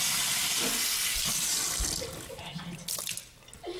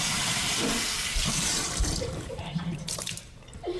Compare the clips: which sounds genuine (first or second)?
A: first